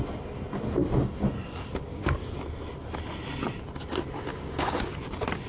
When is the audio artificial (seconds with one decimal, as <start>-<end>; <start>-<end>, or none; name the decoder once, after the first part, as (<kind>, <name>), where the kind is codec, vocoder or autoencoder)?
1.9-2.4 (codec, DAC); 4.3-5.0